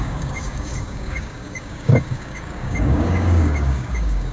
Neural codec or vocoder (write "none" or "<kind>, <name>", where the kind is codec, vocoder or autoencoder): codec, DAC